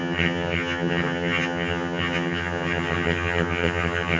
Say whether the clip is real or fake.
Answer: fake